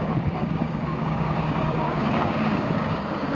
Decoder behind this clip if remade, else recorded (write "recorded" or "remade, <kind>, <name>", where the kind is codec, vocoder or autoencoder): remade, codec, DAC